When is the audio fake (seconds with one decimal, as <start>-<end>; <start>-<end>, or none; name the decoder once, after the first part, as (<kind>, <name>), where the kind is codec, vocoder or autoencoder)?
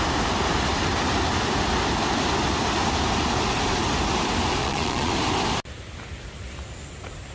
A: 4.6-5.1 (vocoder, Vocos)